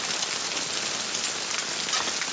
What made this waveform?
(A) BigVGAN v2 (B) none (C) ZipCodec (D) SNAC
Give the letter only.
B